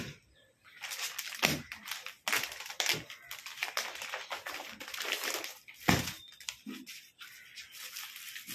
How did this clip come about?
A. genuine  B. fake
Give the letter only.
B